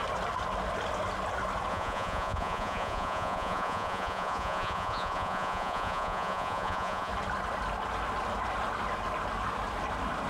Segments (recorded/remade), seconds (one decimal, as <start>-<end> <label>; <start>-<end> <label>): 0.0-1.7 recorded; 1.7-7.1 remade; 7.1-10.3 recorded